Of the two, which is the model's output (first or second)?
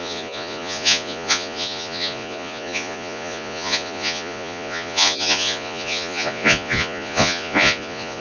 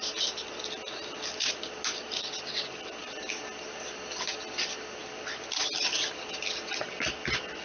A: first